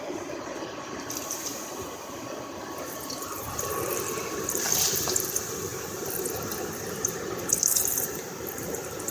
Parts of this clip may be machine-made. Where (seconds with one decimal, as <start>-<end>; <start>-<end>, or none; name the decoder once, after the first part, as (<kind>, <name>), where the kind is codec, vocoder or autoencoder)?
0.0-5.7 (vocoder, BigVGAN v2); 7.5-9.1

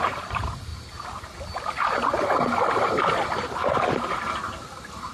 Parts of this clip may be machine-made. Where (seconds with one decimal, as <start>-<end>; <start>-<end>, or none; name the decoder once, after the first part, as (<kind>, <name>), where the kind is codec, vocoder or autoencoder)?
0.0-0.7 (vocoder, BigVGAN v2); 2.7-3.6

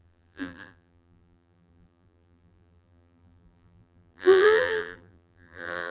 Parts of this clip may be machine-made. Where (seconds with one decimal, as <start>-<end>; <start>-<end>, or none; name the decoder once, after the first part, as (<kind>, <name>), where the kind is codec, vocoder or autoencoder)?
0.0-5.9 (vocoder, BigVGAN v2)

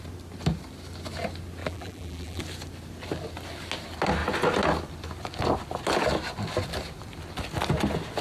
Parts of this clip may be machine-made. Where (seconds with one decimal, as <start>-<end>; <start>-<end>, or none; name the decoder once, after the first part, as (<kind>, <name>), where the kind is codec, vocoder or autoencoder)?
1.6-2.4 (vocoder, BigVGAN v2)

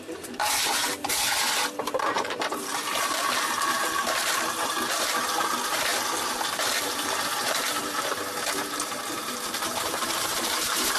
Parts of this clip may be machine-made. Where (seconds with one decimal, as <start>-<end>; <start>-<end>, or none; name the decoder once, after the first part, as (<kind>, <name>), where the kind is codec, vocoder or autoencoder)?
0.0-0.4 (vocoder, BigVGAN v2); 1.8-5.9; 6.8-11.0

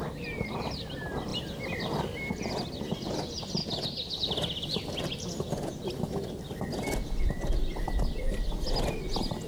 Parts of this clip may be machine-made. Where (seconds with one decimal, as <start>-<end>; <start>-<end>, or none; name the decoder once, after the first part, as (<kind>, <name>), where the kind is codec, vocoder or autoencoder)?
none